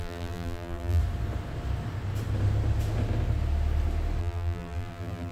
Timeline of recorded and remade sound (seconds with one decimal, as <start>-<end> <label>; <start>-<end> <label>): 0.0-1.0 remade; 1.0-4.2 recorded; 4.2-5.3 remade